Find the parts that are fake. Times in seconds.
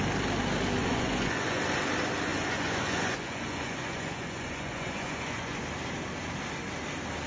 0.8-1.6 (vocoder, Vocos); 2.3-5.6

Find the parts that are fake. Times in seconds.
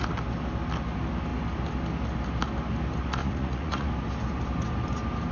3.2-3.9 (vocoder, Vocos)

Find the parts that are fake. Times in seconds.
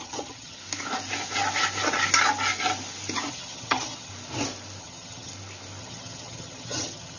0.0-0.6 (vocoder, HiFi-GAN); 3.3-4.1; 4.8-5.3; 5.8-7.2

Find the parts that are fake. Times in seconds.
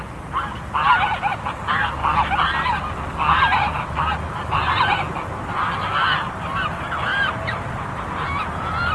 7.1-8.0 (vocoder, BigVGAN v2)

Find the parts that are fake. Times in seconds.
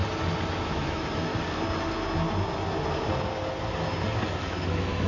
0.5-1.3 (autoencoder, DAC-VAE); 4.4-5.1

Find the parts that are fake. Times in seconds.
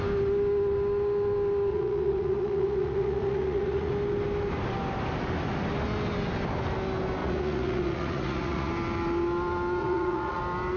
1.7-3.9 (vocoder, Vocos); 7.2-8.7; 9.8-10.4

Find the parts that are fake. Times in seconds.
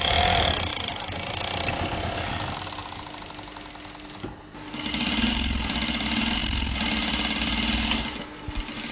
none